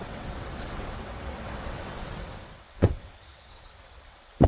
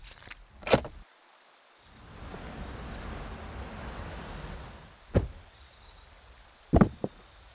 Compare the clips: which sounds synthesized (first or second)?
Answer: first